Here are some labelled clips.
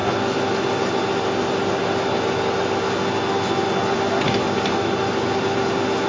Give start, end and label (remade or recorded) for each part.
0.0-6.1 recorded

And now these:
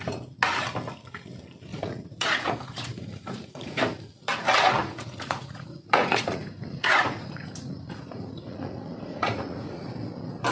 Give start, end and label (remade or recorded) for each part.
0.0-1.7 recorded; 1.7-3.8 remade; 3.8-4.8 recorded; 4.8-9.9 remade; 9.9-10.5 recorded

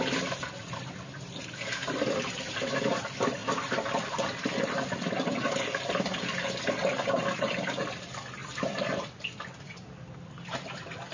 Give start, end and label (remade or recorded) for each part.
0.0-11.1 remade

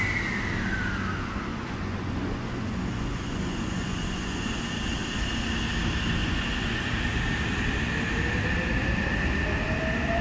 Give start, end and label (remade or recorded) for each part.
0.0-1.5 recorded; 1.5-4.6 remade; 4.6-6.2 recorded; 6.2-6.9 remade; 6.9-10.2 recorded

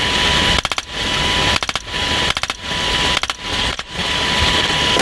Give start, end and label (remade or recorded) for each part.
0.0-3.5 recorded; 3.5-4.1 remade; 4.1-5.0 recorded